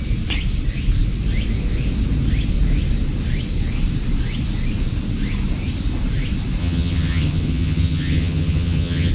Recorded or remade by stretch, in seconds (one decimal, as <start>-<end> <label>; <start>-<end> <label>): 0.0-6.6 recorded; 6.6-9.1 remade